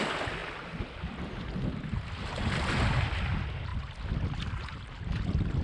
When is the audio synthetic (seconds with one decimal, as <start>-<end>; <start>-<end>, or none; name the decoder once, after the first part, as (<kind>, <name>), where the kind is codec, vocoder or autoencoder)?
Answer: none